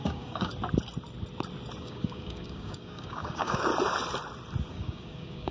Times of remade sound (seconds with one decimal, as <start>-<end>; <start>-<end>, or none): 0.0-0.5; 1.8-3.7; 4.7-5.5